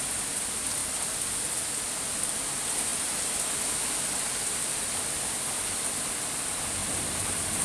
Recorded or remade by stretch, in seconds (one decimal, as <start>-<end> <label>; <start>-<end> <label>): 0.0-6.8 recorded; 6.8-7.6 remade